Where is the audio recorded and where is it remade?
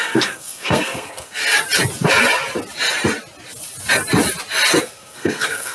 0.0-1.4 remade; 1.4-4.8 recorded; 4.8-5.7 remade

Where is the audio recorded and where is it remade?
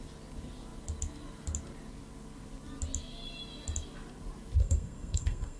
0.0-4.6 recorded; 4.6-5.6 remade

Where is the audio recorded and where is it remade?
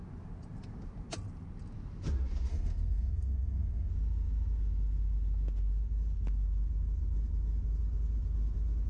0.0-2.5 recorded; 2.5-3.9 remade; 3.9-8.9 recorded